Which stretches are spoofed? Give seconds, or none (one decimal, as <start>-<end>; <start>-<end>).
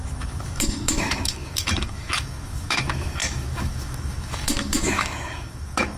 0.0-6.0